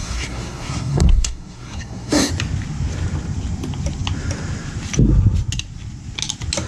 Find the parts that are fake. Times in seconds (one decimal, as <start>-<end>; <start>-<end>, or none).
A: 0.0-2.3